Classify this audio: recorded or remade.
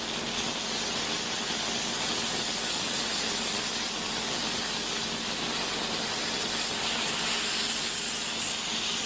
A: recorded